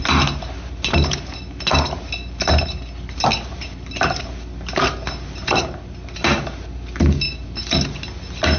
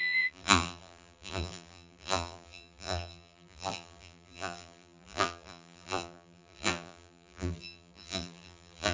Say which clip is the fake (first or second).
second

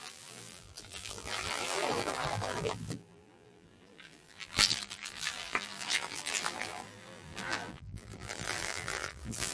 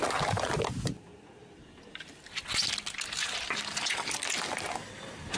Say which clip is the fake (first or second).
first